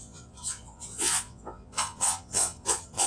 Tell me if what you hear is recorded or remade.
remade